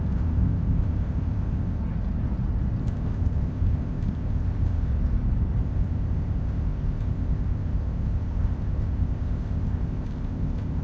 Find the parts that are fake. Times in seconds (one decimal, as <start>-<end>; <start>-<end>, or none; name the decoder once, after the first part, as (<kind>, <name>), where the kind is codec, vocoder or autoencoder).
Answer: 0.0-1.8 (codec, ZipCodec); 2.8-4.9; 5.6-10.8